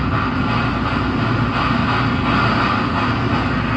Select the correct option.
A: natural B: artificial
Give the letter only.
A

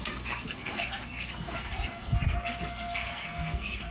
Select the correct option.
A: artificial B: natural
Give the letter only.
A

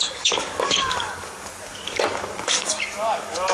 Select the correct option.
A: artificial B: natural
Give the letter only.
A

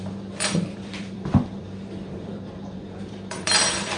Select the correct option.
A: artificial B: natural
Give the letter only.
A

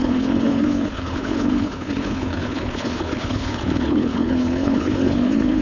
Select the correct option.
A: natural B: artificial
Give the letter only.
B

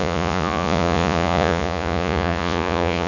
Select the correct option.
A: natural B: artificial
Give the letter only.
B